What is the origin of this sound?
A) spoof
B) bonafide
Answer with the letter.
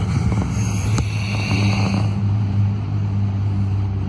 B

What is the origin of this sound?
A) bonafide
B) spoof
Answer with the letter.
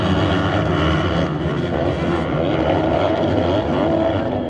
A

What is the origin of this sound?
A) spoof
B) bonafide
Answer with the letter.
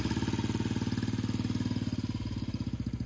B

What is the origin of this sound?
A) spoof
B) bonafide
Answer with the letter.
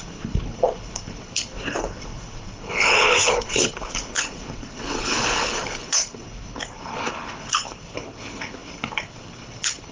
A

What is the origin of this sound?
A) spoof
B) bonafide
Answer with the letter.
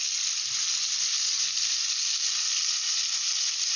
B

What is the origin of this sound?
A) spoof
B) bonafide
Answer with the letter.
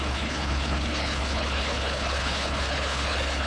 A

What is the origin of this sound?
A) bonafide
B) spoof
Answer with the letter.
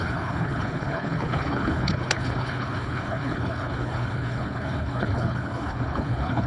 B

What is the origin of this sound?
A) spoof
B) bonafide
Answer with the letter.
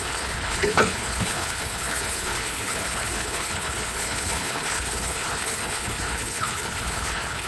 A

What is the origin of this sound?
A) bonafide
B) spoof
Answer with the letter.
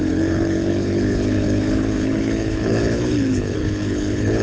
B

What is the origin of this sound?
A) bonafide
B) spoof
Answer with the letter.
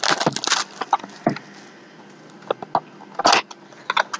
A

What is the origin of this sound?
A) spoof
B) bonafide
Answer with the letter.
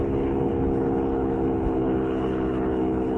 A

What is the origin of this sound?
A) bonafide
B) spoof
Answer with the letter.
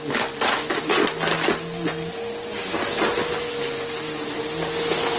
A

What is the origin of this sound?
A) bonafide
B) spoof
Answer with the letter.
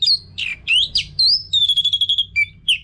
A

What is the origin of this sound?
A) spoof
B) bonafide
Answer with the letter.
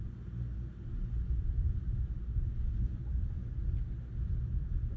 B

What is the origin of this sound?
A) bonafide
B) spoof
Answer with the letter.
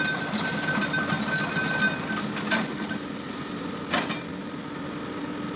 A